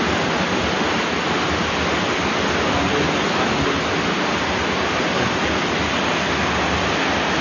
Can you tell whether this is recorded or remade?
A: recorded